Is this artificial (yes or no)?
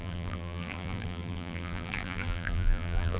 yes